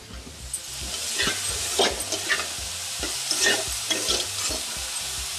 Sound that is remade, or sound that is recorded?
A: recorded